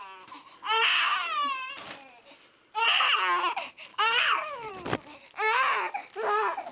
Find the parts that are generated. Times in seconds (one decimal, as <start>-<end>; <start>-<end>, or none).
3.9-4.7